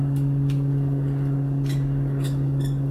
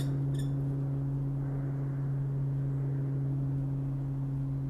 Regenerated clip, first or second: first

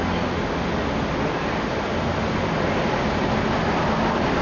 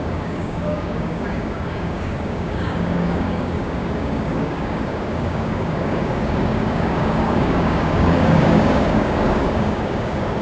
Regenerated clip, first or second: second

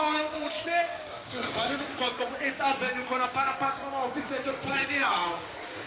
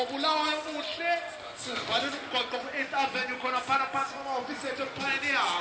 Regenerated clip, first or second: first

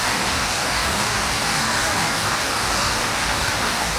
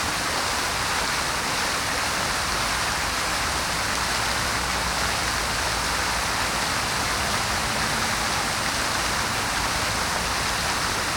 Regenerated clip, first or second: first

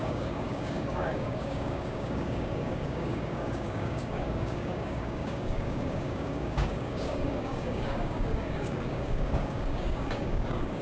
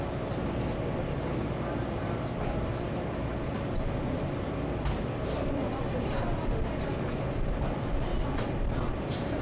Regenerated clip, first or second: first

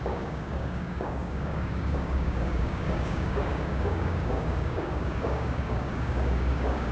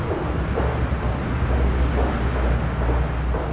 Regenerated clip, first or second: first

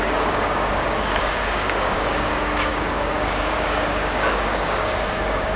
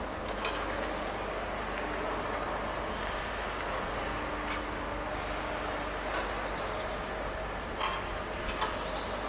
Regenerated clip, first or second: first